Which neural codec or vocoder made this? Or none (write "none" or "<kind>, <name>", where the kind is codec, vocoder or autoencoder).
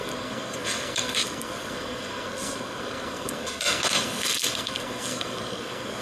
codec, SNAC